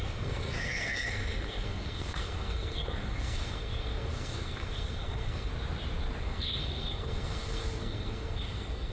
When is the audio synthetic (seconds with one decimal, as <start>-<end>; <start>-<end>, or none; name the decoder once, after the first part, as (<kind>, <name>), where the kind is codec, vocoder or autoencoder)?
0.0-5.5 (codec, SNAC); 6.2-8.9